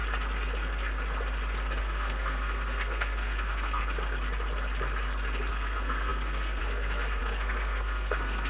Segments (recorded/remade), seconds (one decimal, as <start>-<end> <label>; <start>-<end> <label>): 0.0-1.8 recorded; 1.8-3.8 remade; 3.8-5.5 recorded; 5.5-8.5 remade